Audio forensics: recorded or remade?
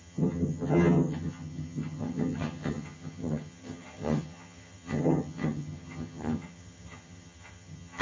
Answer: remade